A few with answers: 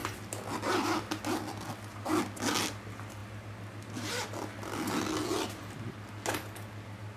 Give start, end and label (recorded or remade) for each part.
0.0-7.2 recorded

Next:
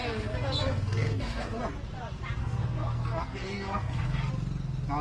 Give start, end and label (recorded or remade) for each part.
0.0-1.6 remade; 1.6-2.4 recorded; 2.4-4.3 remade; 4.3-5.0 recorded

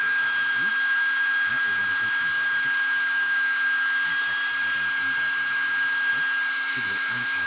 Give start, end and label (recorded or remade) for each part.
0.0-4.1 remade; 4.1-5.5 recorded; 5.5-6.1 remade; 6.1-6.7 recorded; 6.7-7.5 remade

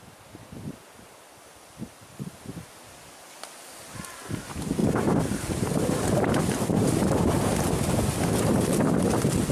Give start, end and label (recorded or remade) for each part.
0.0-4.8 recorded; 4.8-6.3 remade; 6.3-9.5 recorded

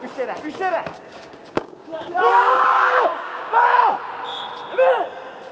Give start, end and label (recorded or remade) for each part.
0.0-0.9 recorded; 0.9-3.6 remade; 3.6-5.5 recorded

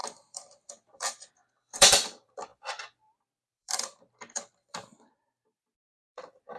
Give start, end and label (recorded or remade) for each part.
0.0-6.6 remade

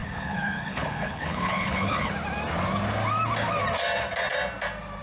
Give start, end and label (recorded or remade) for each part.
0.0-2.1 remade; 2.1-5.0 recorded

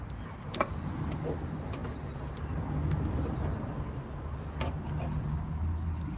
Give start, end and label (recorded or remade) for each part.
0.0-6.2 recorded